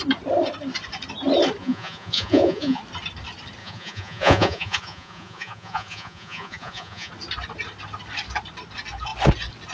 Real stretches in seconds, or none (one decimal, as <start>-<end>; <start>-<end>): 0.0-1.6; 2.8-3.6; 7.1-9.7